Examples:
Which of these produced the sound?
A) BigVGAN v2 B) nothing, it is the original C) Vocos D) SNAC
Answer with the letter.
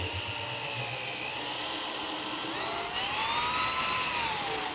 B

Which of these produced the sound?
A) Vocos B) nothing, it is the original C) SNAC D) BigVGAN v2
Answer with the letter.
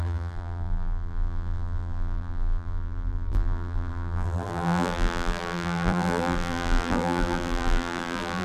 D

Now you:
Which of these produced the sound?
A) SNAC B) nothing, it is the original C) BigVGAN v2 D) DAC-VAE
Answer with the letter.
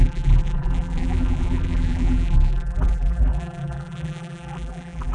C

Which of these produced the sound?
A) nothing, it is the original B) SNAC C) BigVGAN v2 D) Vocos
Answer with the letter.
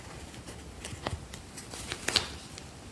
A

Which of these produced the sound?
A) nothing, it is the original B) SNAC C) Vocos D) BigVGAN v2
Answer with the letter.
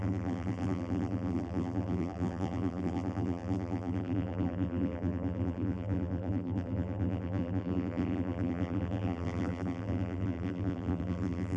D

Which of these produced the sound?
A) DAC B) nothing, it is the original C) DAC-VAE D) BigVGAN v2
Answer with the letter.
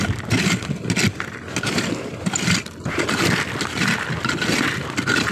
B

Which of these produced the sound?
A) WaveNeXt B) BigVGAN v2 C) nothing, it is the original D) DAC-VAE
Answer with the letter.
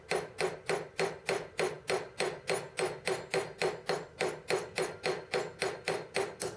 C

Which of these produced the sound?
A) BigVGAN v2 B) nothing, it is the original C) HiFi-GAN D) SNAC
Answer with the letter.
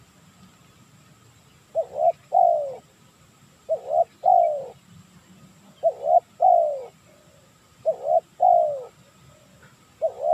B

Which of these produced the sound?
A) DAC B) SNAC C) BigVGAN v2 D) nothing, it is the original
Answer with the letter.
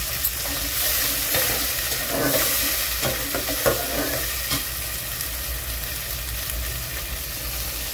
D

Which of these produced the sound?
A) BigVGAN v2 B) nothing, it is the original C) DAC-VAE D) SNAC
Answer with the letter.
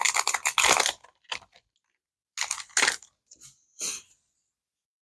B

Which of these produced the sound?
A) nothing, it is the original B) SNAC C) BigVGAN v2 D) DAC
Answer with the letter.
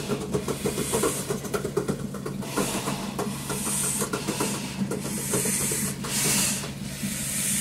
C